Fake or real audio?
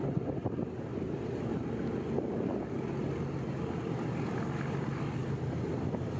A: real